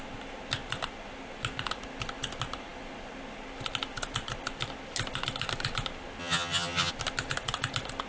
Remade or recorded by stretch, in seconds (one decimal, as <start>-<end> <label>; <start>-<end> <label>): 0.0-6.2 recorded; 6.2-6.9 remade; 6.9-8.1 recorded